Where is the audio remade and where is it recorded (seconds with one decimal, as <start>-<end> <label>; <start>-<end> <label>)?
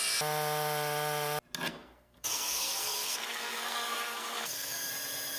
0.0-1.7 recorded; 1.7-4.9 remade; 4.9-5.4 recorded